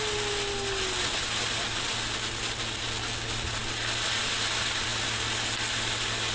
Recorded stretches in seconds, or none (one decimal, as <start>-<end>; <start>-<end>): 0.0-6.3